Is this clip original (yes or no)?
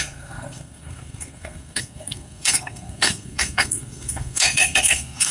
no